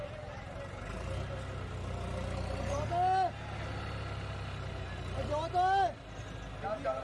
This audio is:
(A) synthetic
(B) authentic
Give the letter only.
B